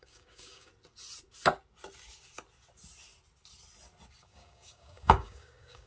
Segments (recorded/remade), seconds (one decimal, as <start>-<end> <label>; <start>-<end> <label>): 0.0-0.7 remade; 0.7-4.2 recorded; 4.2-5.9 remade